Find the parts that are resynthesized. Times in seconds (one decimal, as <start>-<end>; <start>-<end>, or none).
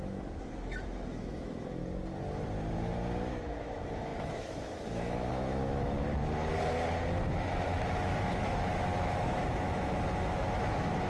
0.0-1.8; 3.2-6.2; 7.2-11.1